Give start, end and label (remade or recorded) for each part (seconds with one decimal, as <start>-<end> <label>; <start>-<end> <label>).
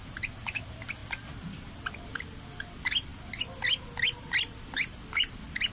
0.0-5.7 recorded